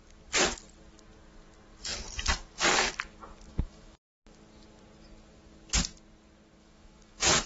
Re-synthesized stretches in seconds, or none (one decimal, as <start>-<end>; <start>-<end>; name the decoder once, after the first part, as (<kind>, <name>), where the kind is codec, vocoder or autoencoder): 3.5-4.1 (autoencoder, DAC-VAE); 6.6-7.5

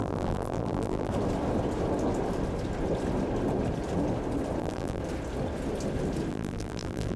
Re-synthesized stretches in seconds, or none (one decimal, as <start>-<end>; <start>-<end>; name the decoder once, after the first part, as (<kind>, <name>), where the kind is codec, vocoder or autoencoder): 0.0-1.1 (vocoder, BigVGAN v2); 4.6-5.0; 6.3-7.2

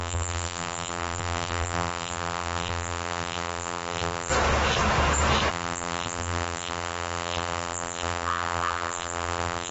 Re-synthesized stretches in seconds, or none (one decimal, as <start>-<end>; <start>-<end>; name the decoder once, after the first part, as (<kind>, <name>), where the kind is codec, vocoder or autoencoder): 0.0-4.3 (vocoder, BigVGAN v2); 5.5-9.7

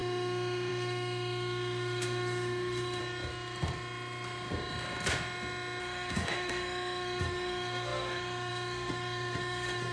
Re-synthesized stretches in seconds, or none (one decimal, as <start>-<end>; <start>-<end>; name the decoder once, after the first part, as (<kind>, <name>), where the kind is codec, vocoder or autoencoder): 0.0-3.0 (autoencoder, DAC-VAE); 5.8-9.9

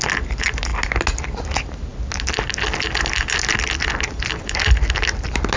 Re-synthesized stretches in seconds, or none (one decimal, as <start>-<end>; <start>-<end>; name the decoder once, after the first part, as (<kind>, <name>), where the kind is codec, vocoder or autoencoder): none